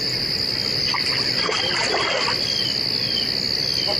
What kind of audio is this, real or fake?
real